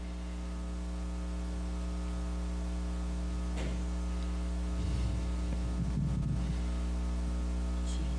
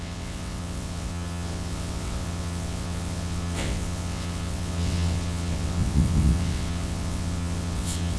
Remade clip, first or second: second